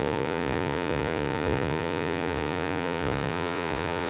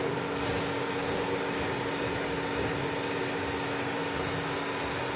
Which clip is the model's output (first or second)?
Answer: first